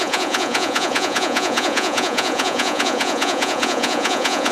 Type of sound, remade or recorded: remade